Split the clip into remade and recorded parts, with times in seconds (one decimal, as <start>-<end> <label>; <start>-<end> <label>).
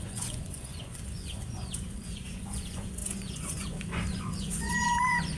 0.0-5.4 remade